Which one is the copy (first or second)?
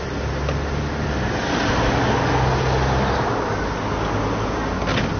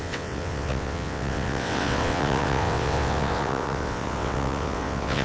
second